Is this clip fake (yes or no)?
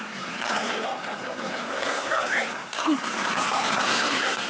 yes